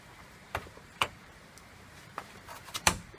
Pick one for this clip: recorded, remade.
remade